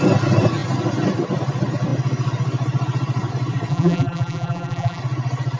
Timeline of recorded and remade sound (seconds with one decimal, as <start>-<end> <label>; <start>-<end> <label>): 0.0-3.7 recorded; 3.7-5.0 remade; 5.0-5.6 recorded